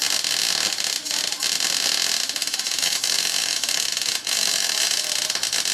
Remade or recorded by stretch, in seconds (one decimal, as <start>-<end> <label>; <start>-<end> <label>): 0.0-2.4 recorded; 2.4-5.1 remade; 5.1-5.7 recorded